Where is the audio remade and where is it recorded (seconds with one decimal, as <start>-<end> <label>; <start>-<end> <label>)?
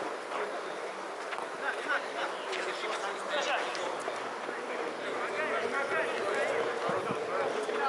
0.0-3.7 recorded; 3.7-5.2 remade; 5.2-7.9 recorded